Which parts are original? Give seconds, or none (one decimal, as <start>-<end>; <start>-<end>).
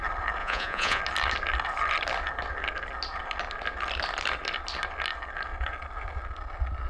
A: 0.0-0.4; 1.0-6.9